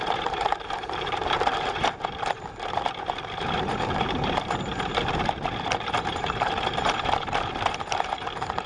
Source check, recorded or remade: remade